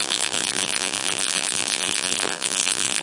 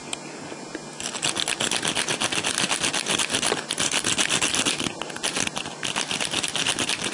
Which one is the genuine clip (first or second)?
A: second